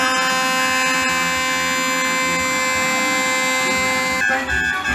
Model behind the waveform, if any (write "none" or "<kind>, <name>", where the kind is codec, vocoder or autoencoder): none